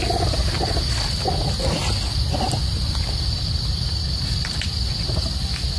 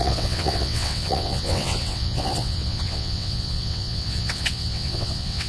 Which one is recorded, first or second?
first